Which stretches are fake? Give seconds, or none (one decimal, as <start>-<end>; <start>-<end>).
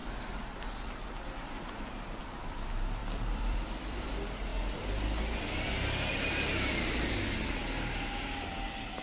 3.0-4.1